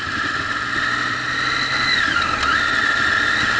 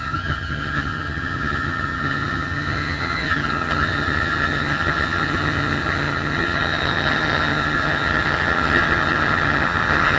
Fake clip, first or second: second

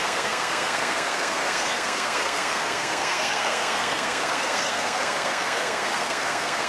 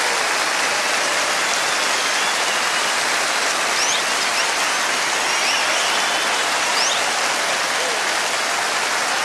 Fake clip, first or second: first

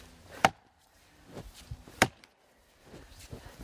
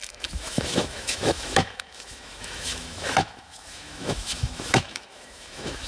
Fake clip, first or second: second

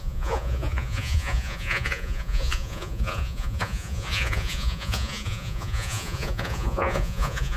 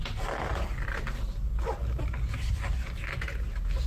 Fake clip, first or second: first